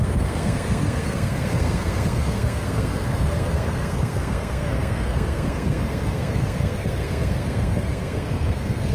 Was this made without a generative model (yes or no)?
no